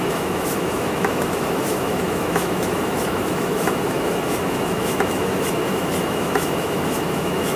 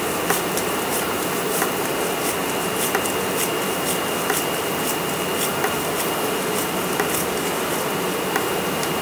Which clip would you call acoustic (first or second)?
second